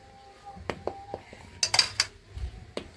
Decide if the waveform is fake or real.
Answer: real